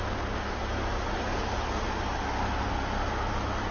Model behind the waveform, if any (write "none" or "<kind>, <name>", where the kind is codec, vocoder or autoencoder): none